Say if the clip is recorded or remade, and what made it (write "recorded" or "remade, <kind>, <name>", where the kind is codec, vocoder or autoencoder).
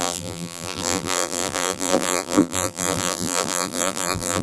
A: remade, vocoder, BigVGAN v2